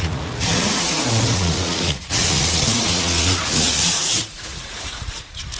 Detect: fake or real fake